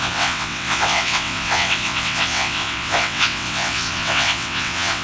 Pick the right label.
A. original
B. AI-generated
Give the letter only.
B